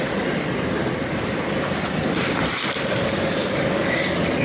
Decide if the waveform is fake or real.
real